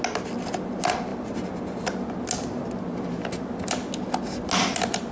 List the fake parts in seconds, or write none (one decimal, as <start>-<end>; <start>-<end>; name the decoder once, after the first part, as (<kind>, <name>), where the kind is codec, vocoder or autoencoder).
none